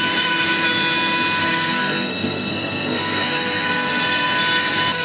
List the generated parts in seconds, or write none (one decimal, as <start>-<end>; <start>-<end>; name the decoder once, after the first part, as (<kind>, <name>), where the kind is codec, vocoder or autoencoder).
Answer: 1.4-4.4 (codec, SNAC)